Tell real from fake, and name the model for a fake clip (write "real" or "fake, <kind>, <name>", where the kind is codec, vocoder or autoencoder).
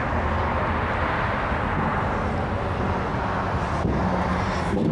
real